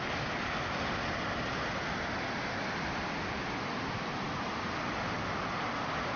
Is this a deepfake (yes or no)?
no